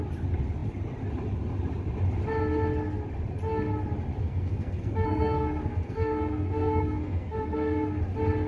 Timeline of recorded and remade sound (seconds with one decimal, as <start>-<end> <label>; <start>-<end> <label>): 0.0-4.2 recorded; 4.2-8.0 remade; 8.0-8.5 recorded

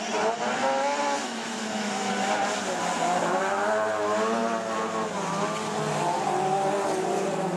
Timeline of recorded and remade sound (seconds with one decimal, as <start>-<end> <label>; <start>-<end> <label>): 0.0-1.2 recorded; 1.2-2.1 remade; 2.1-7.6 recorded